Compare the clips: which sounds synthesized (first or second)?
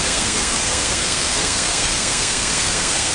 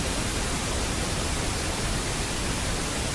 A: first